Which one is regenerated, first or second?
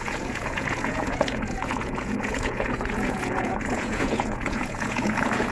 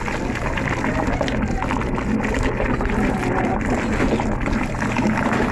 first